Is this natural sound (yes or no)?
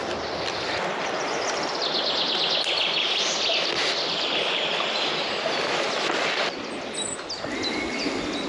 yes